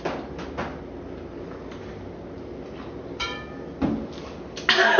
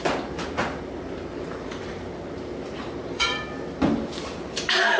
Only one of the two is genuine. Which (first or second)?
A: first